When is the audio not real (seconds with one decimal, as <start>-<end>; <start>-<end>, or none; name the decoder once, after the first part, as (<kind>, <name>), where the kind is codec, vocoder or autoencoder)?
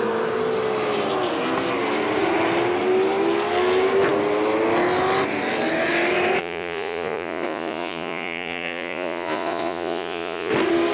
6.4-10.5 (vocoder, Vocos)